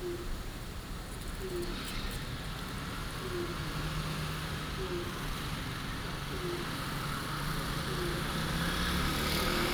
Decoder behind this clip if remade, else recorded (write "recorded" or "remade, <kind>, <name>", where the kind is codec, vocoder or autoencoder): recorded